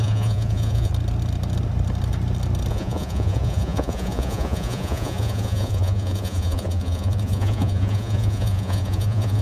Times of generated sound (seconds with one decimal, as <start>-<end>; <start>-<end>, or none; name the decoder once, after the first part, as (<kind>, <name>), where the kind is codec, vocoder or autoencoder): 0.0-0.9 (vocoder, Vocos); 2.7-9.4